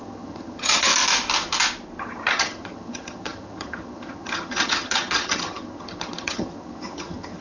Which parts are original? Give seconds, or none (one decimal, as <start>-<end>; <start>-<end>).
0.9-2.0